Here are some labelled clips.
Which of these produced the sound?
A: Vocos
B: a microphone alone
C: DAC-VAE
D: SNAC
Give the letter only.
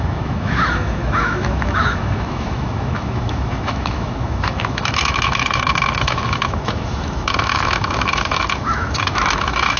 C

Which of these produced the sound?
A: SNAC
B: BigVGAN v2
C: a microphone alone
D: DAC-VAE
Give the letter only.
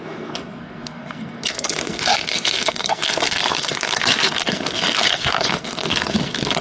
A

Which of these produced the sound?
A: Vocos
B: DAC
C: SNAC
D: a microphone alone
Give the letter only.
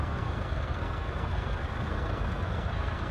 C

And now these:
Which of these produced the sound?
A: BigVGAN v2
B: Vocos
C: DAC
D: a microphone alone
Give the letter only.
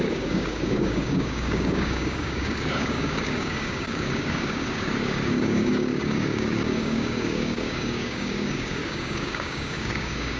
C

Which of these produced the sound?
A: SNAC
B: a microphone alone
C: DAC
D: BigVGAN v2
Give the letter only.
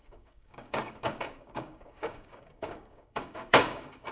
C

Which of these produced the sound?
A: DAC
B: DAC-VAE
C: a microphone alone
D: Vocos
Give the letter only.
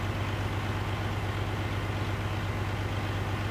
C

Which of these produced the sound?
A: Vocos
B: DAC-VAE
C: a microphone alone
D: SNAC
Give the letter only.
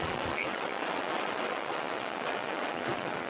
A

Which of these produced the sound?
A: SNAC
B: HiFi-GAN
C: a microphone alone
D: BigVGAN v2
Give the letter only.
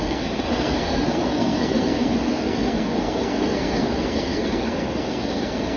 A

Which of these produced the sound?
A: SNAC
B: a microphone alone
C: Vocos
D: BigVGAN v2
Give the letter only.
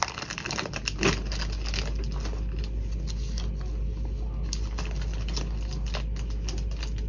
B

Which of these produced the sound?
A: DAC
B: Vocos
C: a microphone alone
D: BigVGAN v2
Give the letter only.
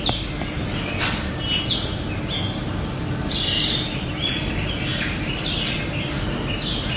C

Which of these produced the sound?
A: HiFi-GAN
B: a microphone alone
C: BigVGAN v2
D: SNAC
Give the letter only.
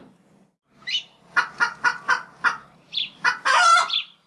B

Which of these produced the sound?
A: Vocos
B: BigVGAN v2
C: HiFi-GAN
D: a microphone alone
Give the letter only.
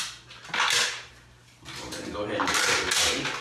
D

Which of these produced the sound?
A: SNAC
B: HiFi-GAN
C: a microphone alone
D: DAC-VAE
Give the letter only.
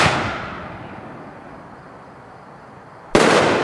C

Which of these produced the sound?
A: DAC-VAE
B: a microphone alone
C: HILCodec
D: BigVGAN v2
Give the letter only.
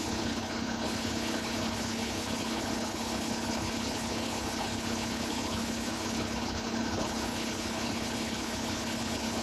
C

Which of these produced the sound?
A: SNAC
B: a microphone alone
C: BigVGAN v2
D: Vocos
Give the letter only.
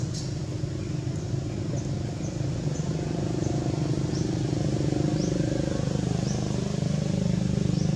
B